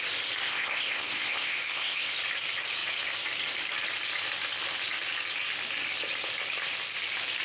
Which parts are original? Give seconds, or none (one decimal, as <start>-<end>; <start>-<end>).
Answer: 0.0-0.4; 2.1-7.4